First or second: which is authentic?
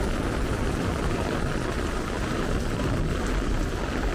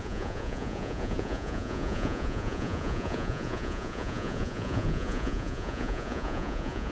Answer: first